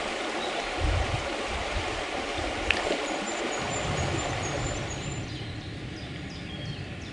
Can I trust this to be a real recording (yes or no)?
no